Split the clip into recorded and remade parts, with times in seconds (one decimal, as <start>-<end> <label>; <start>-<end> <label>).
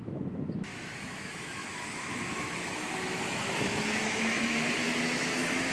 0.0-5.7 remade